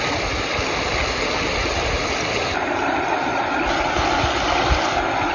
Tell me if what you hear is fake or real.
real